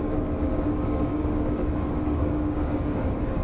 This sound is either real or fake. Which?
fake